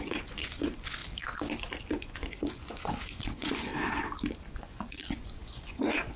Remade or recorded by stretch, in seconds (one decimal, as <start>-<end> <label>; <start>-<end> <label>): 0.0-1.0 remade; 1.0-1.9 recorded; 1.9-3.7 remade; 3.7-4.5 recorded; 4.5-6.2 remade